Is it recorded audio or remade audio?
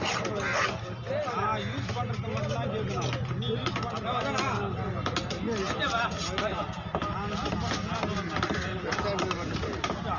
recorded